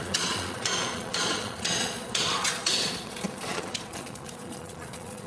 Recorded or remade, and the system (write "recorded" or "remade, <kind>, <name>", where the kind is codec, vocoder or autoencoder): remade, vocoder, Vocos